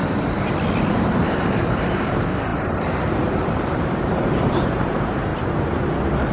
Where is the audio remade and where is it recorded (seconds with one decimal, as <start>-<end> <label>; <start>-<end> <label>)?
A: 0.0-0.9 recorded; 0.9-5.3 remade; 5.3-6.3 recorded